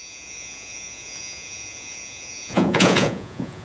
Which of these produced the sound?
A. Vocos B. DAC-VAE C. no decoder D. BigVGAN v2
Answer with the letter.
A